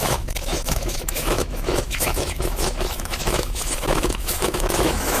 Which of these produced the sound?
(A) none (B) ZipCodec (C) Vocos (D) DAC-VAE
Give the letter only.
D